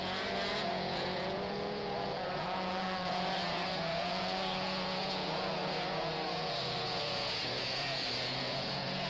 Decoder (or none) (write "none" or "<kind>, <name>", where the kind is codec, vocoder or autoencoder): vocoder, Vocos